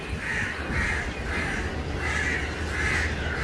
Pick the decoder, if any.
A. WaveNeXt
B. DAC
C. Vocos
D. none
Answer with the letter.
D